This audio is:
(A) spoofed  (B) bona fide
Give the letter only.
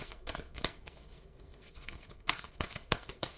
A